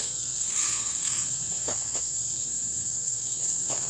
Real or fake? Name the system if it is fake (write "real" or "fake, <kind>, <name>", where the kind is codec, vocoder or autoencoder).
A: fake, codec, SNAC